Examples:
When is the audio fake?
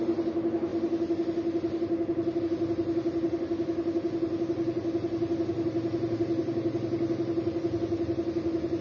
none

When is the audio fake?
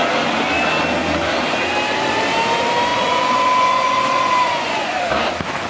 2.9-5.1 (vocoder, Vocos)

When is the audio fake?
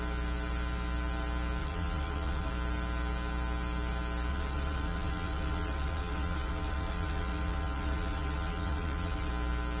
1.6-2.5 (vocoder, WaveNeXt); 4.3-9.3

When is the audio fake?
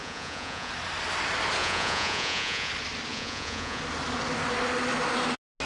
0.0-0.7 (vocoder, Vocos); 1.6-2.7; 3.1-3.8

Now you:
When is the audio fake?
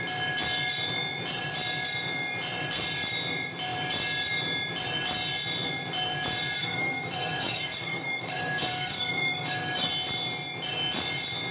6.6-9.9 (codec, DAC)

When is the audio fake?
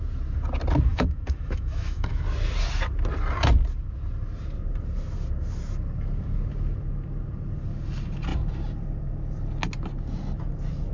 0.9-2.2 (autoencoder, DAC-VAE)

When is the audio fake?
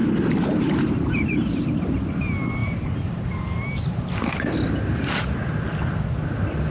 0.0-2.0 (vocoder, BigVGAN v2); 2.6-4.1